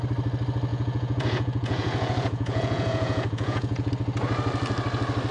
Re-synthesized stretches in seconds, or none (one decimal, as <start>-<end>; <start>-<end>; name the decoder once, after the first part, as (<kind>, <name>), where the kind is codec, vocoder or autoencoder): 0.7-3.9 (vocoder, Vocos)